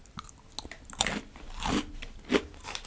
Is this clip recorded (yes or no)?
yes